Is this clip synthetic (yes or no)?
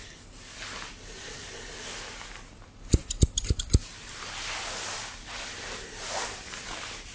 no